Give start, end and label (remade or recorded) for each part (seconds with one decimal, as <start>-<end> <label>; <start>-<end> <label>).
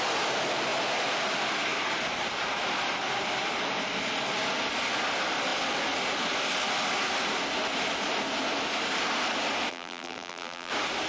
0.0-9.7 recorded; 9.7-10.7 remade; 10.7-11.1 recorded